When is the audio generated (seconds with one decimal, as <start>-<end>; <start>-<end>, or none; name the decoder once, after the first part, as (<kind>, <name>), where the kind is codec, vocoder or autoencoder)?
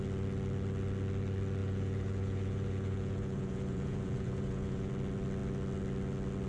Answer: 1.6-4.9 (vocoder, Vocos)